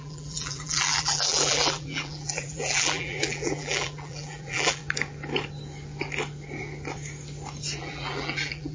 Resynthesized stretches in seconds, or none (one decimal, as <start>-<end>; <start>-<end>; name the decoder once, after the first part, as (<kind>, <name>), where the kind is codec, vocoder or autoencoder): 0.0-4.8 (vocoder, BigVGAN v2); 7.8-8.7